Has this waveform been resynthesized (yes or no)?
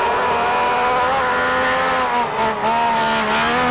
no